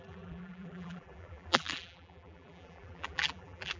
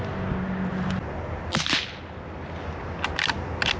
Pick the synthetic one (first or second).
first